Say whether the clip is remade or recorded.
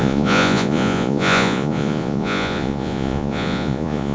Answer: remade